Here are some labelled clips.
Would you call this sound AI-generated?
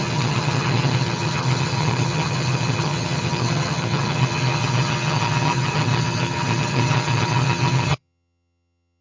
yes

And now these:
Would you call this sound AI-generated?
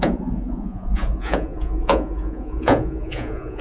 yes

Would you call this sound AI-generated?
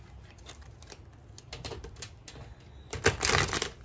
no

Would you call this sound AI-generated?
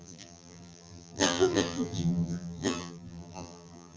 yes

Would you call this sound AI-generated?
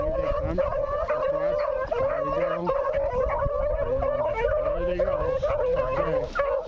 no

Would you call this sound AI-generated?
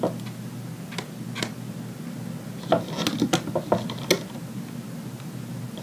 no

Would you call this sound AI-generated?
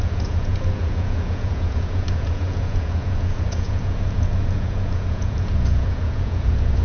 yes